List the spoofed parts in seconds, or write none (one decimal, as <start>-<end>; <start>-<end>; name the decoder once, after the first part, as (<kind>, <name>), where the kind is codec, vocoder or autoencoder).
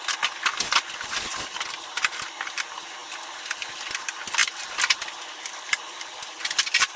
3.0-3.7 (vocoder, BigVGAN v2); 4.4-7.0